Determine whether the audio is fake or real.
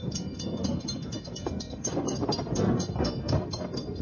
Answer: fake